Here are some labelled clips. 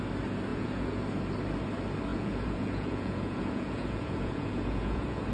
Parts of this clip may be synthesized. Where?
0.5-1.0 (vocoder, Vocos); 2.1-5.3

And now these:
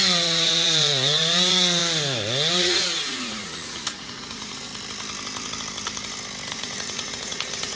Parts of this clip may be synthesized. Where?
0.0-1.8 (vocoder, Vocos); 2.5-4.7; 6.5-7.8

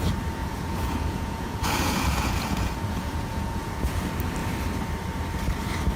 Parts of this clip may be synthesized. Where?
0.4-4.0 (vocoder, Vocos)

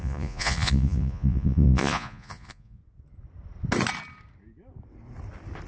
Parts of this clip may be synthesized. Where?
0.0-2.8 (vocoder, Vocos)

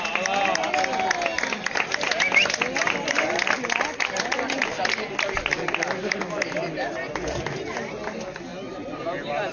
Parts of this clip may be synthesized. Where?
none

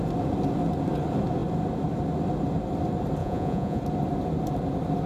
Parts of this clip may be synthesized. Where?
3.2-3.8 (vocoder, Vocos)